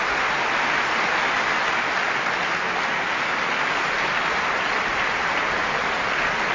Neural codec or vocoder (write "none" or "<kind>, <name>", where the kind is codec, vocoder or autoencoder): none